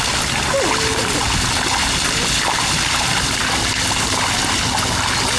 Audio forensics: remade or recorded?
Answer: recorded